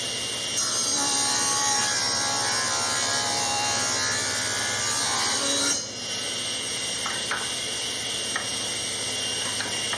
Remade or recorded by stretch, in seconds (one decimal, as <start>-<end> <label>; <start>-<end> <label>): 0.0-0.8 recorded; 0.8-5.8 remade; 5.8-10.0 recorded